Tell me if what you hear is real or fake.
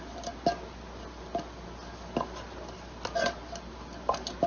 real